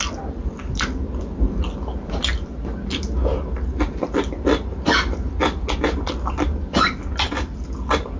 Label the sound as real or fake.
real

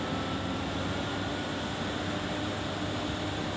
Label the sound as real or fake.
real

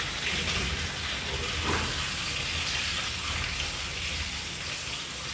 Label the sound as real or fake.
real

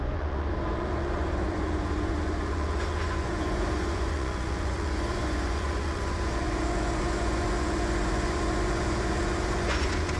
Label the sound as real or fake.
fake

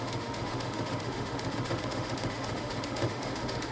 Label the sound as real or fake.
fake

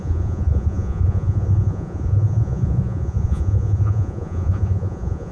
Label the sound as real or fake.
fake